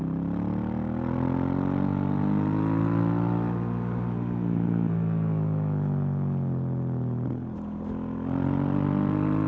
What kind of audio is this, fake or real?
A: real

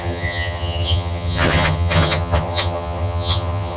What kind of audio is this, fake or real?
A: fake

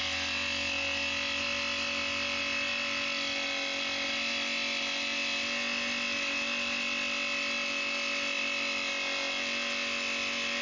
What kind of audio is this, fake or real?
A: real